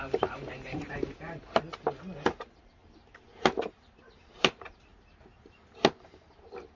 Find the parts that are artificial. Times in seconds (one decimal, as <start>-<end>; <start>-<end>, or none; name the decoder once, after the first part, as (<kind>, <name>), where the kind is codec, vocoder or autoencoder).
0.0-2.8 (vocoder, BigVGAN v2); 4.3-4.9; 6.0-6.8